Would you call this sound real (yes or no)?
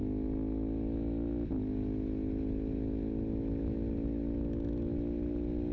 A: yes